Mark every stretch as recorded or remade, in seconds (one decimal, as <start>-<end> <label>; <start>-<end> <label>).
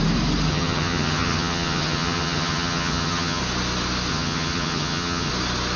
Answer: 0.0-0.5 recorded; 0.5-3.4 remade; 3.4-4.1 recorded; 4.1-5.3 remade; 5.3-5.8 recorded